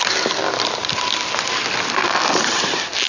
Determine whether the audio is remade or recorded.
recorded